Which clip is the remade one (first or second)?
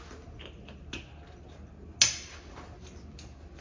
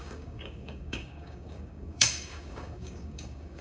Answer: second